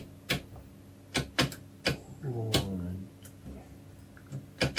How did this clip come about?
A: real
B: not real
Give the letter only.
A